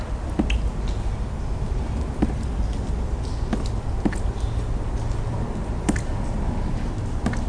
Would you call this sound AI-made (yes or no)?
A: no